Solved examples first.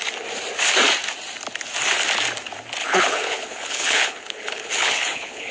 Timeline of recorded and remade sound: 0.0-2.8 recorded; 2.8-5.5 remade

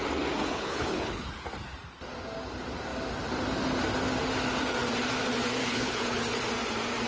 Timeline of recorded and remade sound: 0.0-0.4 recorded; 0.4-1.3 remade; 1.3-5.6 recorded; 5.6-6.4 remade; 6.4-7.1 recorded

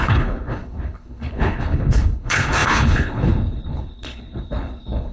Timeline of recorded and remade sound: 0.0-5.1 remade